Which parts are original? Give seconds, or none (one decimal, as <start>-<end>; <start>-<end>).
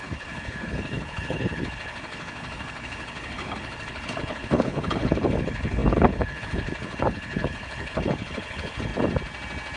8.9-9.8